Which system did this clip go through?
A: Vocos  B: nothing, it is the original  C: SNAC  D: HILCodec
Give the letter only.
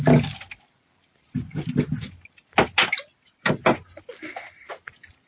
B